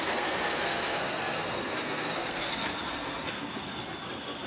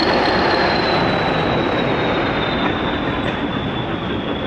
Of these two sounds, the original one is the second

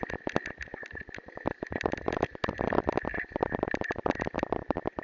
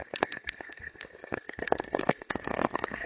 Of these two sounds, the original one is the first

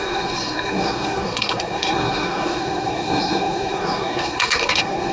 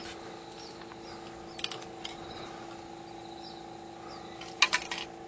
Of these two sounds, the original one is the second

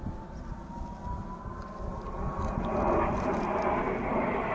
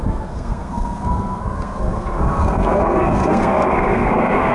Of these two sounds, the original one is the first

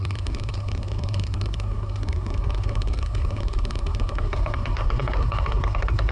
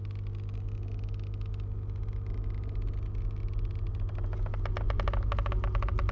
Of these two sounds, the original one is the second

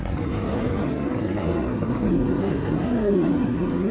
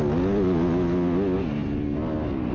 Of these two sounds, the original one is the second